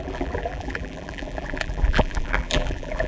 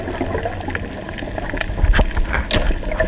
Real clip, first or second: second